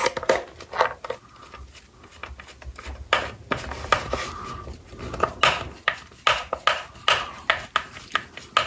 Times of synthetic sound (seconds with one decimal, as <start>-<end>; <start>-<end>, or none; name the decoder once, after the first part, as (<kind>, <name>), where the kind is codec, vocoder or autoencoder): none